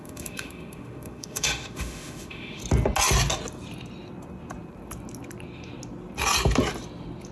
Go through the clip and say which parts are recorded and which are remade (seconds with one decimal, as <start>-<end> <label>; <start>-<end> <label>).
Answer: 0.0-2.6 remade; 2.6-7.3 recorded